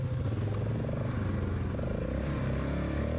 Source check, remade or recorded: recorded